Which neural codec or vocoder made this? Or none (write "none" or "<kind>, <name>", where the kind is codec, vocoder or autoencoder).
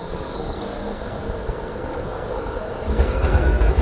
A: codec, SNAC